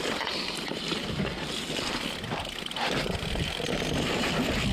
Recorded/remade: remade